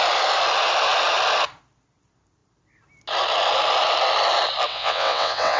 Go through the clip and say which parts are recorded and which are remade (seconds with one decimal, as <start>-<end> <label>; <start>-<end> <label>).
0.0-4.7 recorded; 4.7-5.6 remade